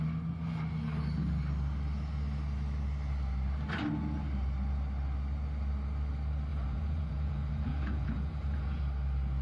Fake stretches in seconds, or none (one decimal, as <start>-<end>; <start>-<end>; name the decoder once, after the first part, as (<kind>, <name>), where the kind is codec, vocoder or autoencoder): 6.5-8.8 (vocoder, Vocos)